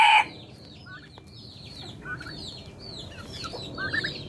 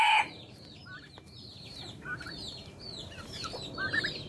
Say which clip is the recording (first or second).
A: first